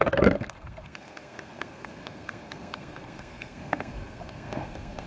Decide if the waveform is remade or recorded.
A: remade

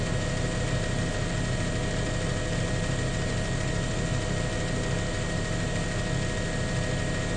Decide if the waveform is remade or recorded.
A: recorded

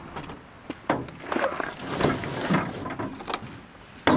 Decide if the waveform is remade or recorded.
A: recorded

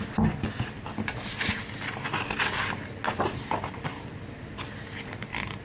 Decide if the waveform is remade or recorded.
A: recorded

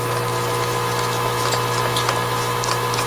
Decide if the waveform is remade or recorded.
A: recorded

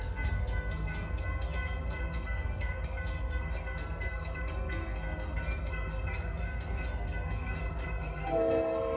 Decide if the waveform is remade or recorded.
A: remade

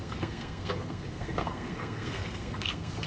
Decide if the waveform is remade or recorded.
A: remade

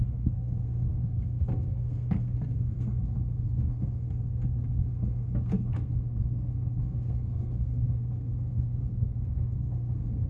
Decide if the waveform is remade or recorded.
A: remade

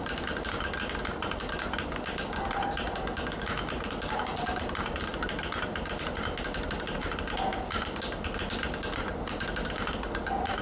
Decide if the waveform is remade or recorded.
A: recorded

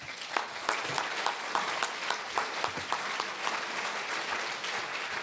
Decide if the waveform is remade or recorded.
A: recorded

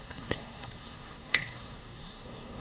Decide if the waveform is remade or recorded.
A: remade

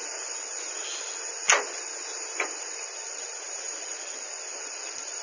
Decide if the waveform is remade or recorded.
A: recorded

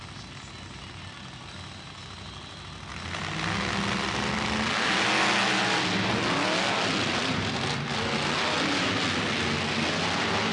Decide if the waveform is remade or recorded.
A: recorded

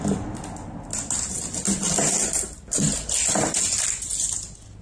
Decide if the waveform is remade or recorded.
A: recorded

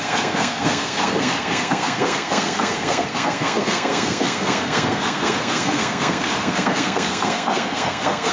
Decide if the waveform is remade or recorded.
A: remade